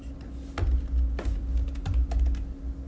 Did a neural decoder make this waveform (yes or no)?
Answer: no